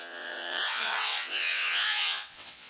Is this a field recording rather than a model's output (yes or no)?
no